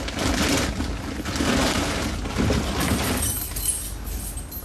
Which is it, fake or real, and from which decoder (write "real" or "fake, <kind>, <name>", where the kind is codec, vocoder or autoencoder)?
real